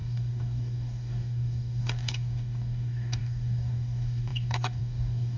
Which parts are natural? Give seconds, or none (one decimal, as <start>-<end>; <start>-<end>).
none